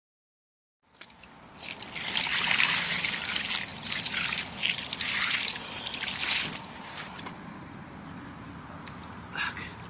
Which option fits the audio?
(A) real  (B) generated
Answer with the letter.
A